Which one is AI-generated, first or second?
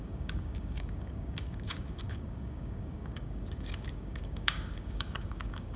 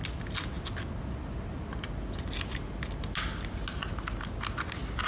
first